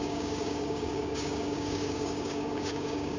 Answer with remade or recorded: remade